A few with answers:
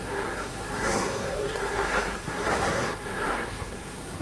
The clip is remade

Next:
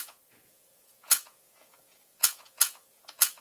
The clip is remade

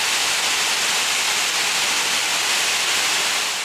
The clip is recorded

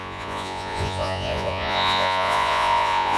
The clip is remade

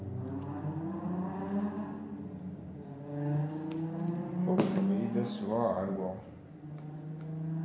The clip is recorded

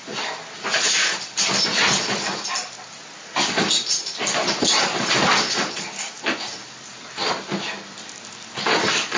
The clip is recorded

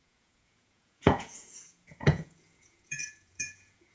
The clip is remade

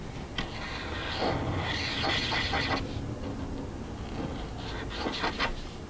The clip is recorded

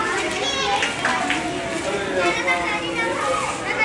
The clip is recorded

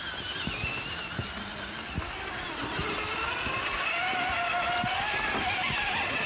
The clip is recorded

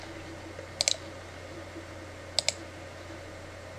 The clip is recorded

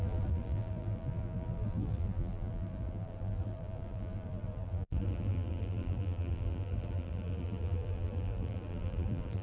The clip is remade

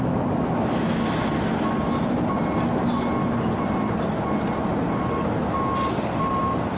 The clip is recorded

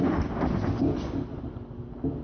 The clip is recorded